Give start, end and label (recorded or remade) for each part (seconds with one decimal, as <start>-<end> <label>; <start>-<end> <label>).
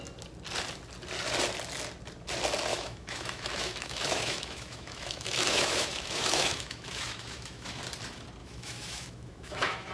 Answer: 0.0-2.7 recorded; 2.7-7.8 remade; 7.8-8.4 recorded; 8.4-9.9 remade